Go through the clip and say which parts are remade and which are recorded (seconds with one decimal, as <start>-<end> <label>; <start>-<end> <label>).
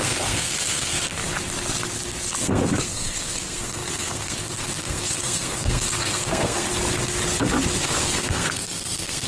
0.0-1.2 remade; 1.2-2.4 recorded; 2.4-6.7 remade; 6.7-7.8 recorded; 7.8-9.3 remade